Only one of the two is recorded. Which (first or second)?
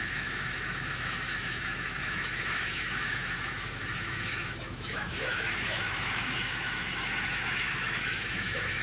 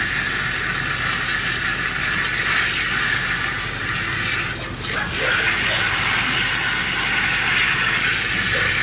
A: second